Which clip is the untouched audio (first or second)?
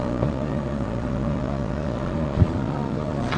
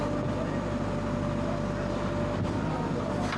second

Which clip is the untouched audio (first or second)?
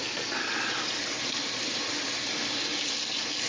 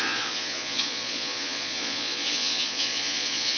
first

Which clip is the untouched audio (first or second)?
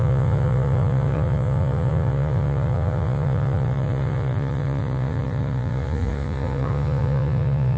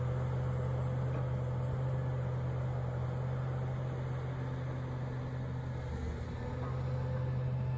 second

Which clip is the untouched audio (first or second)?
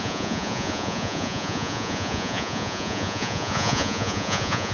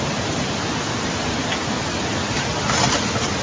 second